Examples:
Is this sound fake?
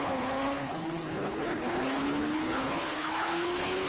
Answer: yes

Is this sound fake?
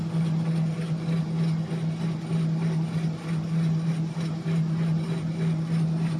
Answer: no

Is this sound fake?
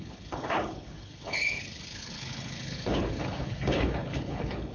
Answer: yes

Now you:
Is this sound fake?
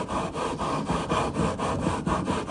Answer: no